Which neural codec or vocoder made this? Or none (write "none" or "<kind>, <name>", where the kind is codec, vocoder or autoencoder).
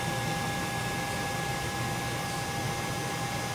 none